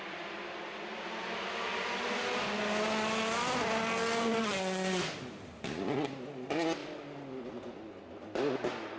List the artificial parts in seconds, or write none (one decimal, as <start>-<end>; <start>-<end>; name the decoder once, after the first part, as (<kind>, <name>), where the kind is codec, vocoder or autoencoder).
6.8-7.5 (vocoder, BigVGAN v2)